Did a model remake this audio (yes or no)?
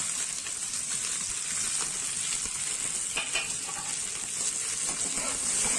no